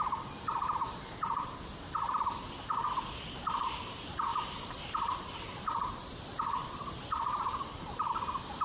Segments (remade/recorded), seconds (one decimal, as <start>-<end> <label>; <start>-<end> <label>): 0.0-4.3 recorded; 4.3-8.1 remade; 8.1-8.6 recorded